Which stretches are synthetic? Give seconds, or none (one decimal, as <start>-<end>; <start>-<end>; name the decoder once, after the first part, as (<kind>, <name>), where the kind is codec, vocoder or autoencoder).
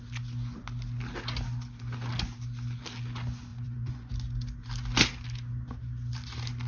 3.5-4.1 (vocoder, Vocos)